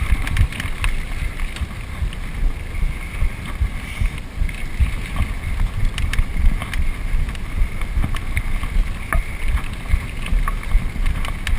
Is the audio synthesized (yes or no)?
no